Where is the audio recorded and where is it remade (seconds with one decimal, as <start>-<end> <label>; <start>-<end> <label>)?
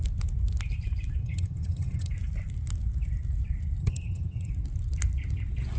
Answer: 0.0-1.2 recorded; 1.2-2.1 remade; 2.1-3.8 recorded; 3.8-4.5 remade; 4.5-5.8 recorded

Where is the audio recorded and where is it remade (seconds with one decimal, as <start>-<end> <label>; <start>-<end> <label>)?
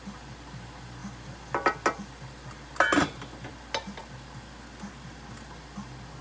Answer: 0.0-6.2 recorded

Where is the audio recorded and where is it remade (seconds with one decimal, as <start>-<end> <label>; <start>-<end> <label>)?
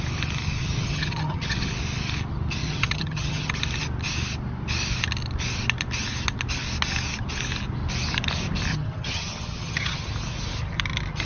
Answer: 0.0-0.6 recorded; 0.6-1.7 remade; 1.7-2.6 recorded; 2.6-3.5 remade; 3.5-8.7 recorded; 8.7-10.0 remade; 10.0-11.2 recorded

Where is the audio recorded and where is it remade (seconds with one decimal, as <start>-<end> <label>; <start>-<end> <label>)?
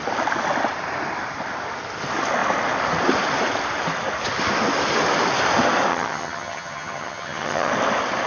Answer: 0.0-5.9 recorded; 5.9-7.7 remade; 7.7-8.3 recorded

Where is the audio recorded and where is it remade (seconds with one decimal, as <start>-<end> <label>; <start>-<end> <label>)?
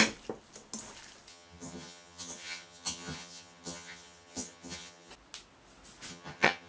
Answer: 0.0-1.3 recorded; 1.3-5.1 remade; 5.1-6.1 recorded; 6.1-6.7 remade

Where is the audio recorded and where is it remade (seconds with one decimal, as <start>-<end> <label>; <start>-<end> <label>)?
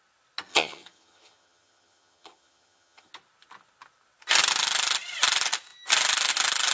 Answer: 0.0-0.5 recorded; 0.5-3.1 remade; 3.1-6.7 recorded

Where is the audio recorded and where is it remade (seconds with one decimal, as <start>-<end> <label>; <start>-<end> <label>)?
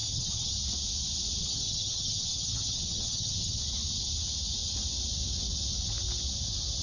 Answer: 0.0-0.5 remade; 0.5-1.4 recorded; 1.4-3.6 remade; 3.6-6.8 recorded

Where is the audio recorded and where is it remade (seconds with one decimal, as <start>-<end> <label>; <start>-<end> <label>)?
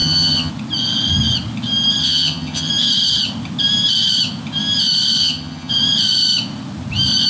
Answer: 0.0-0.5 remade; 0.5-2.0 recorded; 2.0-2.7 remade; 2.7-5.2 recorded; 5.2-5.7 remade; 5.7-7.3 recorded